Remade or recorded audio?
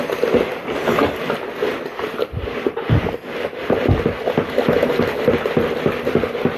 recorded